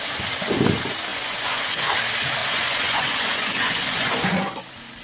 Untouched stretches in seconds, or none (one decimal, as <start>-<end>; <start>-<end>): 0.0-1.1; 1.9-2.4; 4.6-5.0

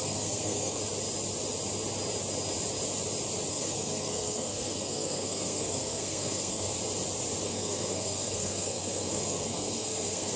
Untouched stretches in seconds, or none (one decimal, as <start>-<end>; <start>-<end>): 0.8-3.5; 6.8-7.4

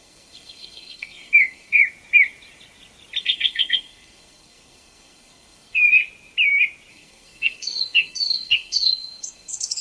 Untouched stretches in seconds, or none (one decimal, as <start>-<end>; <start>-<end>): 1.8-3.2; 6.0-6.9

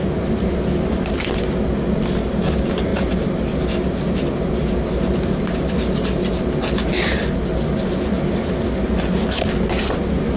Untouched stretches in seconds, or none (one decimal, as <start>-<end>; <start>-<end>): 0.0-2.9; 4.3-10.4

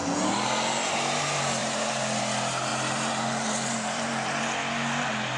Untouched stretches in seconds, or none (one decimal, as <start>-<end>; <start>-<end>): 0.0-1.6; 2.2-2.7; 4.4-5.4

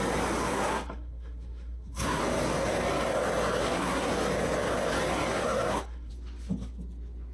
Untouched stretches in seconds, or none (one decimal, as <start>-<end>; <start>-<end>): 0.0-0.5; 2.2-3.6; 4.1-5.3; 6.1-7.3

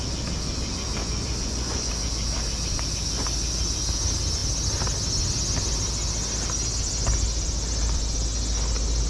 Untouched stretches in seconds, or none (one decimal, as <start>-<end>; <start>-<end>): 0.0-1.0; 1.9-9.1

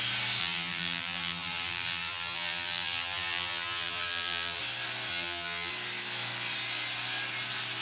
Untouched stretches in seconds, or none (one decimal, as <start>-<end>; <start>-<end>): 0.0-0.4; 4.6-5.1; 5.7-7.8